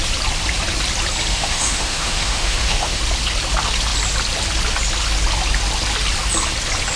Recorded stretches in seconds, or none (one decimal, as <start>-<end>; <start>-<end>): 0.0-1.3; 3.0-7.0